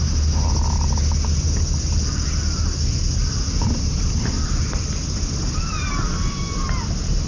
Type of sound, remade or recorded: recorded